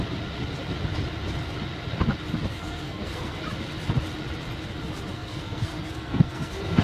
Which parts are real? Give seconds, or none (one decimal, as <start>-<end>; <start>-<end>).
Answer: 0.0-2.5; 3.4-5.1